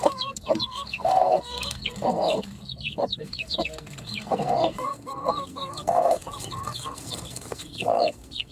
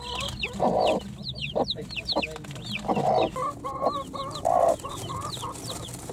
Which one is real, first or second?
second